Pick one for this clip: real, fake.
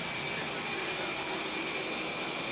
real